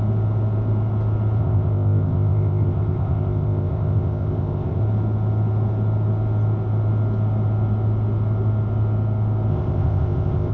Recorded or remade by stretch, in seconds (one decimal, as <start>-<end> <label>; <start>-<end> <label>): 0.0-1.4 recorded; 1.4-4.8 remade; 4.8-9.5 recorded; 9.5-10.5 remade

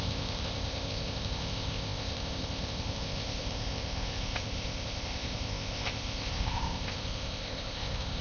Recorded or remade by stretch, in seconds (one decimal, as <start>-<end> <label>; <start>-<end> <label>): 0.0-8.2 remade

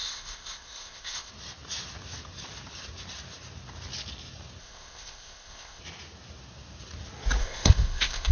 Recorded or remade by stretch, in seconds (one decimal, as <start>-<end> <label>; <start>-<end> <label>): 0.0-1.3 remade; 1.3-4.6 recorded; 4.6-5.8 remade; 5.8-7.4 recorded; 7.4-8.3 remade

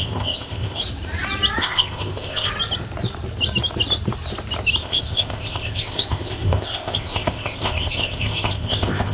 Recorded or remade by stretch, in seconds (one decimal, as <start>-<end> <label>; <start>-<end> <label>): 0.0-0.8 remade; 0.8-1.6 recorded; 1.6-2.5 remade; 2.5-4.8 recorded; 4.8-9.1 remade

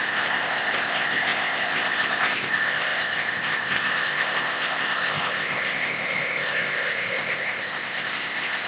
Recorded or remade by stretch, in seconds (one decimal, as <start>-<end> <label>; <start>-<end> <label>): 0.0-8.7 remade

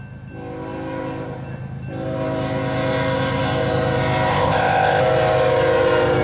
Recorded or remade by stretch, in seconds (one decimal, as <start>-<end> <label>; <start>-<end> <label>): 0.0-4.3 recorded; 4.3-5.0 remade; 5.0-6.2 recorded

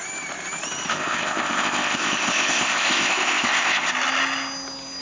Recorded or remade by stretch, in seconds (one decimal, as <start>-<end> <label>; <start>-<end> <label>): 0.0-0.9 recorded; 0.9-3.9 remade; 3.9-5.0 recorded

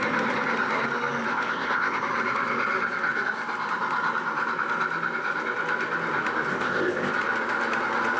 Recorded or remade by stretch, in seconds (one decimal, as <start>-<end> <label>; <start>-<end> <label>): 0.0-1.3 recorded; 1.3-2.0 remade; 2.0-6.5 recorded; 6.5-7.1 remade; 7.1-8.2 recorded